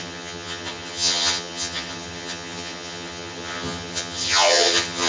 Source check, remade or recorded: remade